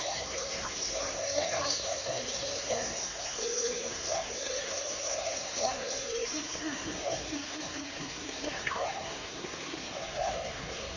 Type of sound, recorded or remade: remade